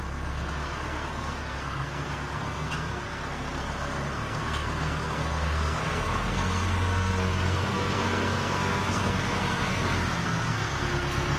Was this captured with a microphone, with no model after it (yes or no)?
no